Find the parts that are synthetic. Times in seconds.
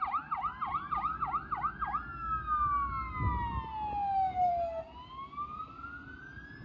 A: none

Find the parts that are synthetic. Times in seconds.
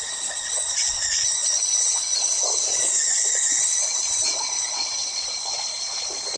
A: 0.0-6.4